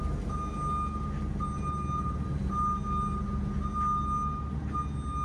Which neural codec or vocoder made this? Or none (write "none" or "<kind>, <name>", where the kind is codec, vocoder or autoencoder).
none